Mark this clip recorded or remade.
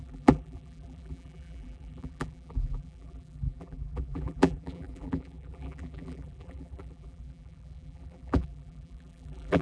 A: remade